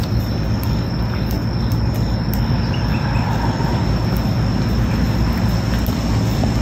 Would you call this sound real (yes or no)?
yes